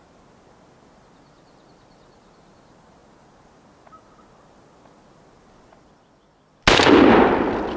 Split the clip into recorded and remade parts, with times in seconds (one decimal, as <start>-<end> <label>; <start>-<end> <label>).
0.0-7.8 recorded